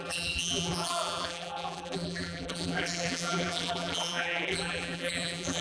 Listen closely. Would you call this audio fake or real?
fake